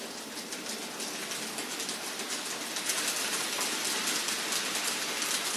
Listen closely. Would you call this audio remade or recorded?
recorded